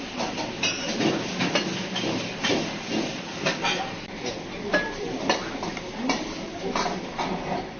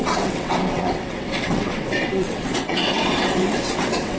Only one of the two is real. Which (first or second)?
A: first